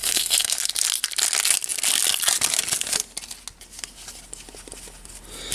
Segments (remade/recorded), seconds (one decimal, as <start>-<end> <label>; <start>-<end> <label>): 0.0-0.5 remade; 0.5-5.5 recorded